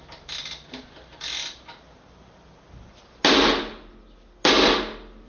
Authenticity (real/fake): real